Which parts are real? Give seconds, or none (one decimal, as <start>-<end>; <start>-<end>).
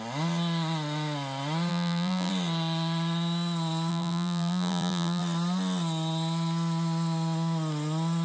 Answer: 0.0-1.7; 2.3-3.9; 5.2-8.2